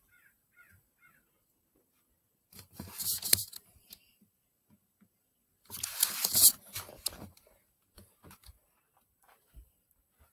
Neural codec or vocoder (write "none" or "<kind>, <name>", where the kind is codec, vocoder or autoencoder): vocoder, BigVGAN v2